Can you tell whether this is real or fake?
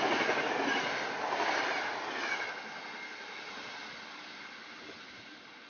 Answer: real